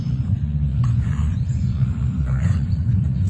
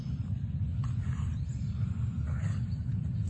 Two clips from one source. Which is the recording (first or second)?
second